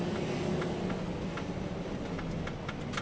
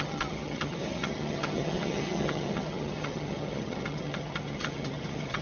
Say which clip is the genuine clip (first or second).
first